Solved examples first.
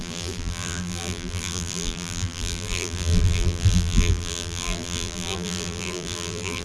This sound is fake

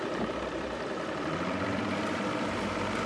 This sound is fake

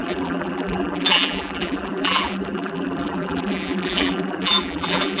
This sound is fake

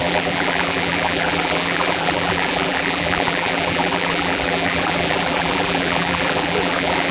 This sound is fake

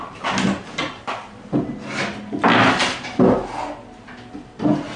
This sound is real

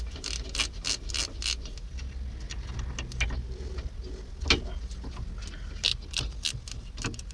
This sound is real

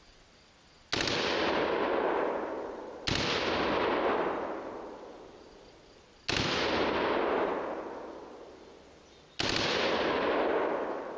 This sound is real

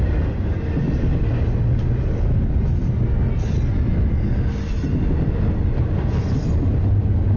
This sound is real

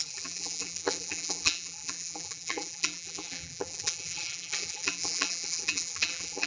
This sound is fake